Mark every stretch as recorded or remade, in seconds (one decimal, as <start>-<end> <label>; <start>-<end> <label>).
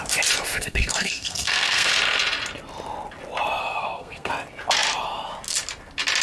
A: 0.0-0.5 recorded; 0.5-1.9 remade; 1.9-3.6 recorded; 3.6-4.3 remade; 4.3-6.2 recorded